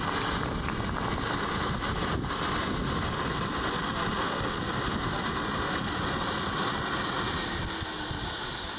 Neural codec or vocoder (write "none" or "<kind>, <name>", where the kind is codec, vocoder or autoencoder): none